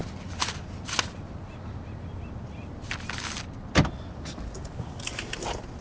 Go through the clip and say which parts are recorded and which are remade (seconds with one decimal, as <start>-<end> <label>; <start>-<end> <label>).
0.0-5.8 recorded